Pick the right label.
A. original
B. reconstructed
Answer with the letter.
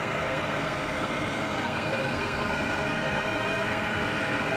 B